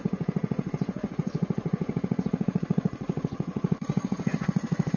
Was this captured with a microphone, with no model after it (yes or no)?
no